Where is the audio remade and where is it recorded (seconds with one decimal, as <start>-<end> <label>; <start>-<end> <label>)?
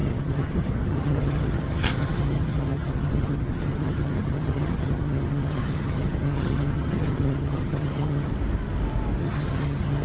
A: 0.0-8.3 remade; 8.3-9.2 recorded; 9.2-10.0 remade